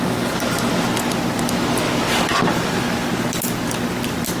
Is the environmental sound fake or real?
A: real